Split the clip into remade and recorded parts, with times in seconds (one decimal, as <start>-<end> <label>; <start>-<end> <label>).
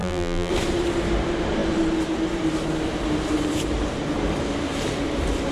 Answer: 0.0-0.5 remade; 0.5-5.5 recorded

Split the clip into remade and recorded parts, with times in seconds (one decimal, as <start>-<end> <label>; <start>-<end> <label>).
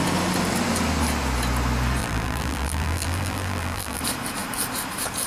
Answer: 0.0-2.0 recorded; 2.0-4.0 remade; 4.0-5.3 recorded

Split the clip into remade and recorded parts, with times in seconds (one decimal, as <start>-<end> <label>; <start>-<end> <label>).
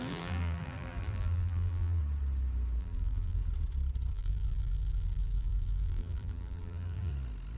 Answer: 0.0-2.0 remade; 2.0-2.8 recorded; 2.8-3.4 remade; 3.4-4.1 recorded; 4.1-7.1 remade; 7.1-7.6 recorded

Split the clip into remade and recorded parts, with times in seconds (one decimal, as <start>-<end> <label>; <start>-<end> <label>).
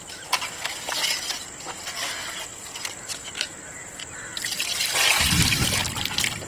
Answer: 0.0-6.5 recorded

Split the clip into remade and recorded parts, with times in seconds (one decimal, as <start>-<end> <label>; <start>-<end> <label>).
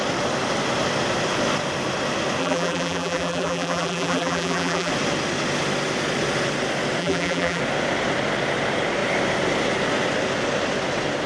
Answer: 0.0-2.4 recorded; 2.4-4.9 remade; 4.9-7.0 recorded; 7.0-7.6 remade; 7.6-11.3 recorded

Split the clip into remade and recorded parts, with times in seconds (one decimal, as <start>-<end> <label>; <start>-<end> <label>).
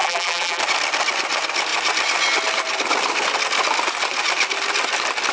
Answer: 0.0-0.6 remade; 0.6-5.3 recorded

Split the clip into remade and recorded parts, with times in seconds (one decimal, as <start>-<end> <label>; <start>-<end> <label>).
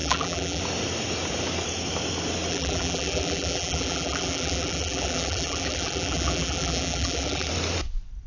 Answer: 0.0-0.6 remade; 0.6-2.5 recorded; 2.5-7.5 remade; 7.5-8.3 recorded